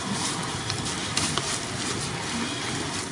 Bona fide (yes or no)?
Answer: yes